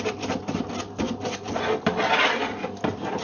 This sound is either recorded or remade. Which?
recorded